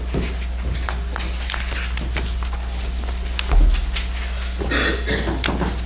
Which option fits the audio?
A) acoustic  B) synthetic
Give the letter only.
A